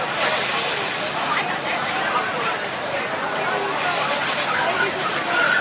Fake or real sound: fake